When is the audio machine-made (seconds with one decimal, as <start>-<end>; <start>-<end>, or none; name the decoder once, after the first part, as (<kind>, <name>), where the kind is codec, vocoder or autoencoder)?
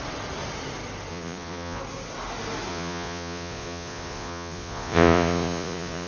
1.1-1.8 (vocoder, Vocos); 2.7-6.1